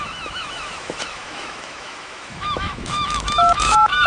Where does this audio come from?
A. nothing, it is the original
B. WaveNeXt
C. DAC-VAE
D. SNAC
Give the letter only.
C